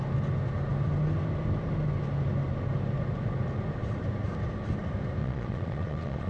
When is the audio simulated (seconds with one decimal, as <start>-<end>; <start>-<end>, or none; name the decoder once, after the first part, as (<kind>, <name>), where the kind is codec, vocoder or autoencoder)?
5.2-6.3 (vocoder, Vocos)